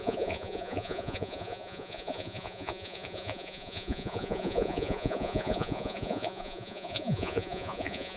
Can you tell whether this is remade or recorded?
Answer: remade